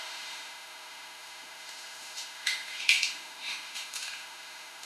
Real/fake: fake